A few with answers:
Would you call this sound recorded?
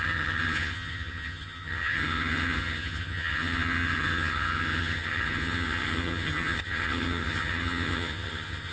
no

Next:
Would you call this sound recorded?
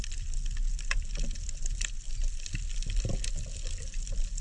yes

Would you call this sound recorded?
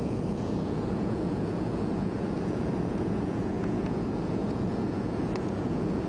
no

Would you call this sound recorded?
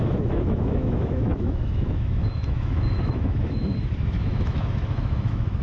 no